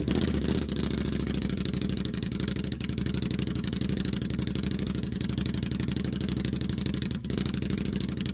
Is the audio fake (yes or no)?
yes